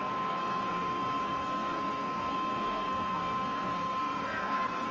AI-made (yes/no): yes